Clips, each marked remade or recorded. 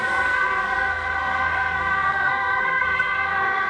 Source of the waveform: remade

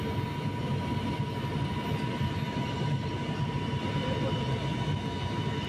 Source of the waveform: recorded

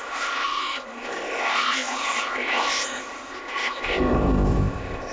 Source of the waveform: remade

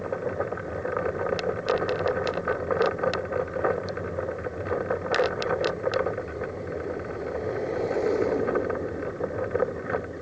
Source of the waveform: recorded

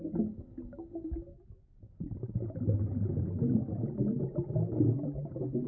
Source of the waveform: recorded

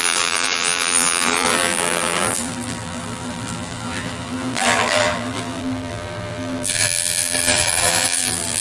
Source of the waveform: remade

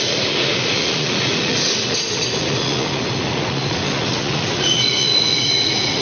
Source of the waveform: remade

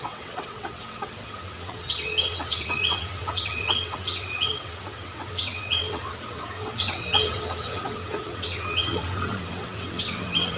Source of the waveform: remade